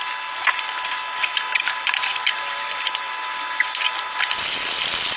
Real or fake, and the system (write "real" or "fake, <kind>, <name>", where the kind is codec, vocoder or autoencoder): real